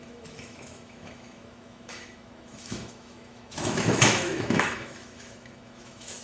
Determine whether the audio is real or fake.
fake